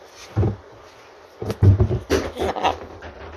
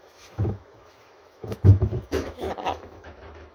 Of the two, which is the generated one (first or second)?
second